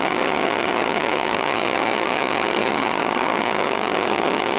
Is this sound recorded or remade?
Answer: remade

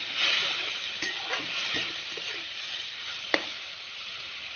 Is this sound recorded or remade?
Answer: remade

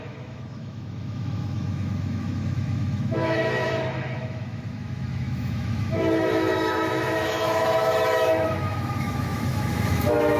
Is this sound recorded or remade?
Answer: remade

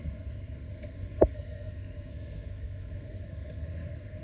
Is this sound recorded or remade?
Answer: remade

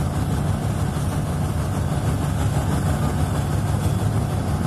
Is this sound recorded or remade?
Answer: recorded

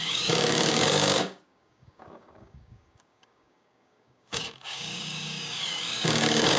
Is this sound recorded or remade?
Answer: remade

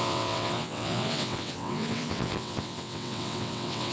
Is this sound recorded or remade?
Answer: remade